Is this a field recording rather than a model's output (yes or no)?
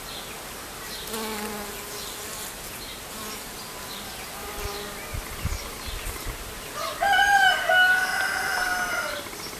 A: yes